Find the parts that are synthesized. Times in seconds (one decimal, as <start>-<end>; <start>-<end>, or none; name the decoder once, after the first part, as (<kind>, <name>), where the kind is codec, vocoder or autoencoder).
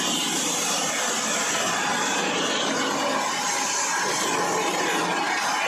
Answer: none